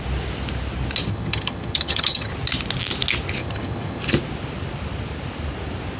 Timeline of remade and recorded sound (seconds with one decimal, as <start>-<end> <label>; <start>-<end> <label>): 0.0-1.1 recorded; 1.1-2.3 remade; 2.3-3.4 recorded; 3.4-4.0 remade; 4.0-6.0 recorded

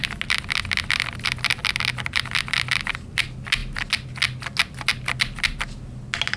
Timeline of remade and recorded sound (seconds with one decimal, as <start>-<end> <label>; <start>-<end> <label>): 0.0-6.4 recorded